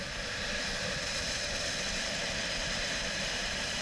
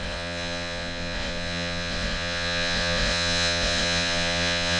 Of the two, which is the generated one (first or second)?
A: second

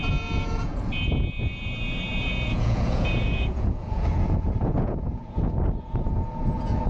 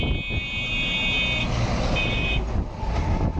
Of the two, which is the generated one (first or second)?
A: first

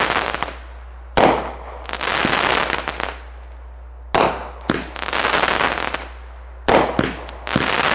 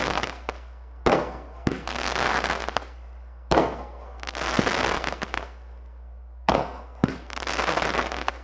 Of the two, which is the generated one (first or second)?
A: second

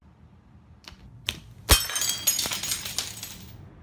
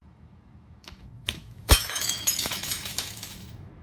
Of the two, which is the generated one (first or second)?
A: second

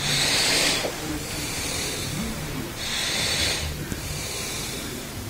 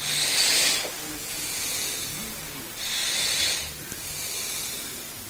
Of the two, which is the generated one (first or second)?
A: first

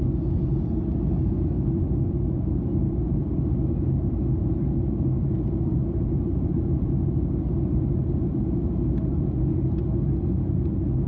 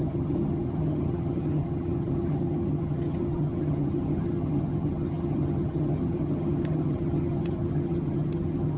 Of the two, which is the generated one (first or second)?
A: second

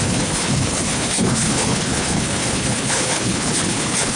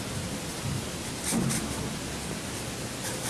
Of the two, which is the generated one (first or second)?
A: first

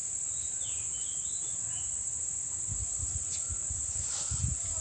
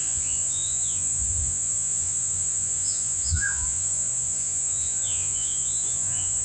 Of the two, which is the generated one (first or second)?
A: second